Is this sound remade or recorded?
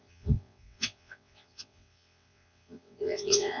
remade